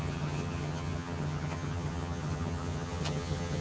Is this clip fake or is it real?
fake